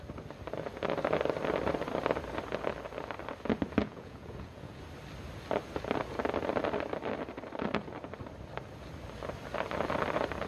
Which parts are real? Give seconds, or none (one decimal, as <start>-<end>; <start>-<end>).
0.0-3.8; 4.8-10.5